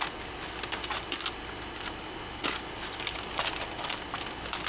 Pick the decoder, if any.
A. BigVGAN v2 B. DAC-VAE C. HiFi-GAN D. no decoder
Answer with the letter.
D